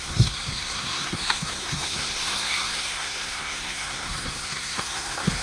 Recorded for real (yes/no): no